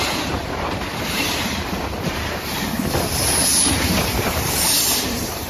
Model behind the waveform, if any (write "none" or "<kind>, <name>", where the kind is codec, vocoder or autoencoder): vocoder, BigVGAN v2